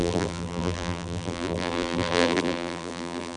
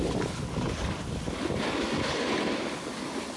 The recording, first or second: second